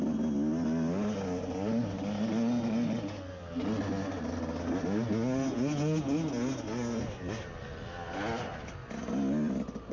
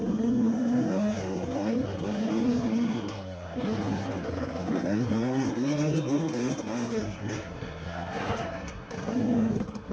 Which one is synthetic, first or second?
second